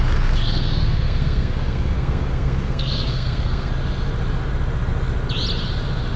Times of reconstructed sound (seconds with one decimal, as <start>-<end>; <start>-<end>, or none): 0.0-3.7